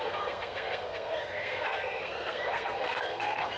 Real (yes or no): no